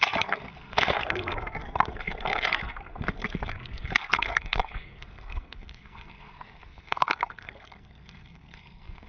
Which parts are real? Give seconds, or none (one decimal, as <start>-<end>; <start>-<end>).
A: none